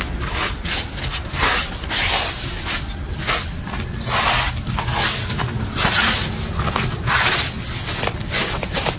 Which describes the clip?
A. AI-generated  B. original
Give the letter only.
B